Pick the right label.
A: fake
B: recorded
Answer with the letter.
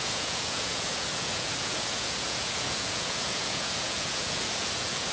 A